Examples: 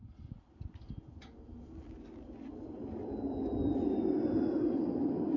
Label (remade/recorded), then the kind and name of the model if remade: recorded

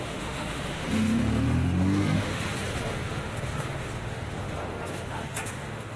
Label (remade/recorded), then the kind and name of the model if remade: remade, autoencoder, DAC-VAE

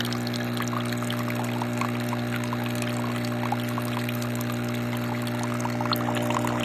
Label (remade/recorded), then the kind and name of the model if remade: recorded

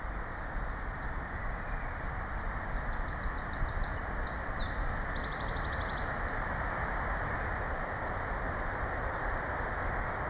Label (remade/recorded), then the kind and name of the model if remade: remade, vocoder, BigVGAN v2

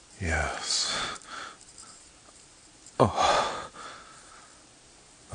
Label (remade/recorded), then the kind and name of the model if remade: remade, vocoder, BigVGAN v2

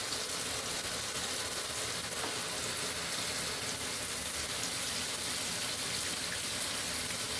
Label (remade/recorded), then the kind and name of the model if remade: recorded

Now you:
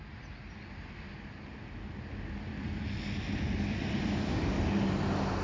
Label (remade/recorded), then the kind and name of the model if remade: recorded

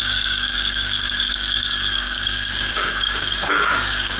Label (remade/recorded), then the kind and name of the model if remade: remade, codec, DAC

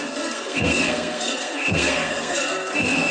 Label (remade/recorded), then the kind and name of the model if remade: remade, codec, SNAC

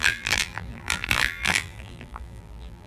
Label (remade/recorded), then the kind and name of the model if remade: remade, vocoder, BigVGAN v2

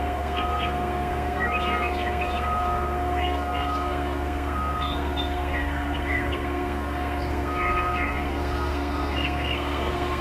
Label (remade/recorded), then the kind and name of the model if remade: remade, codec, SNAC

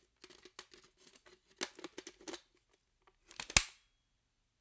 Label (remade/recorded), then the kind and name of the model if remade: recorded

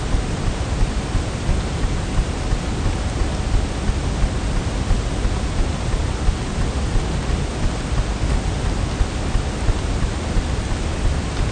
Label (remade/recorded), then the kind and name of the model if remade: recorded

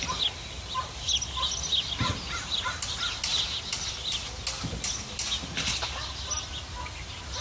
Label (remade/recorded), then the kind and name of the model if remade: recorded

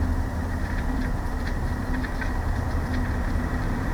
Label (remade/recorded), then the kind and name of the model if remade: remade, vocoder, BigVGAN v2